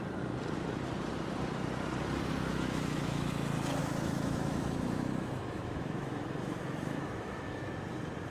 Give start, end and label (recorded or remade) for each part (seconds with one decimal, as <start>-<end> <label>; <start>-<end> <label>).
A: 0.0-2.5 recorded; 2.5-3.3 remade; 3.3-3.8 recorded; 3.8-7.7 remade; 7.7-8.3 recorded